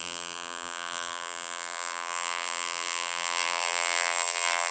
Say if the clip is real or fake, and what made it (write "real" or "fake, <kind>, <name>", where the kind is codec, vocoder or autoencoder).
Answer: fake, vocoder, BigVGAN v2